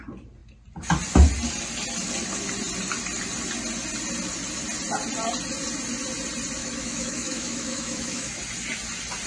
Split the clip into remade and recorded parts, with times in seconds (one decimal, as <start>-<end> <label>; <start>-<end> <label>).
0.0-6.6 recorded; 6.6-8.4 remade; 8.4-9.3 recorded